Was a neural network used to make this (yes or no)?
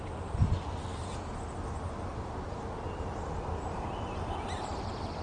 no